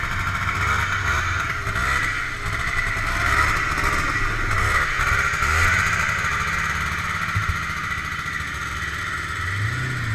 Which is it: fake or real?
real